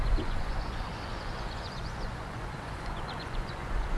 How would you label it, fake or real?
fake